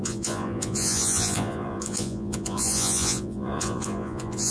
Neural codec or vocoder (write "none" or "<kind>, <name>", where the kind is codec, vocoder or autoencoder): vocoder, Vocos